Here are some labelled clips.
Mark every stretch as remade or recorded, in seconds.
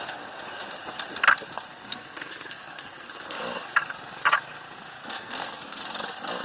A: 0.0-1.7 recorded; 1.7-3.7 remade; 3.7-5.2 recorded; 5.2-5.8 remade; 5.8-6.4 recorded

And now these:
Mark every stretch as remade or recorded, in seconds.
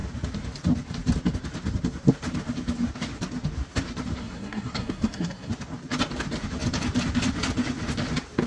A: 0.0-4.2 recorded; 4.2-5.5 remade; 5.5-8.5 recorded